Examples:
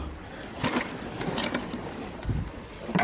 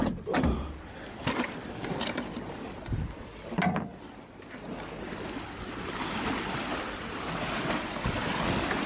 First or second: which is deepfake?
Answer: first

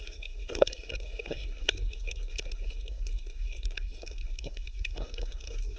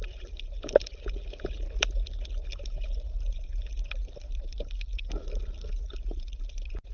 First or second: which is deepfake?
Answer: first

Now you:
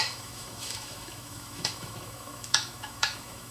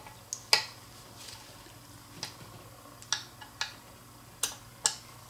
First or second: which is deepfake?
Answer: first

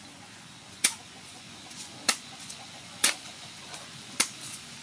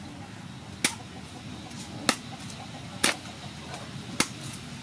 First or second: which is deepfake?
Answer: first